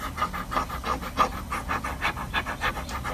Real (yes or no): yes